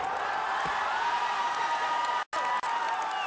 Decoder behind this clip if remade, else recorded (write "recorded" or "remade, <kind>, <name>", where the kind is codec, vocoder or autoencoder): recorded